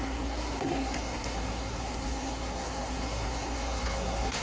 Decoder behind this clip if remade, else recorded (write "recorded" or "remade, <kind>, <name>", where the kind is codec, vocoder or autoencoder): remade, codec, SNAC